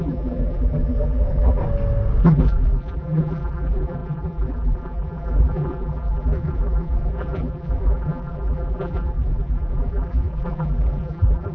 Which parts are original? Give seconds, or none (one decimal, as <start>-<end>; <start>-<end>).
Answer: 1.6-2.2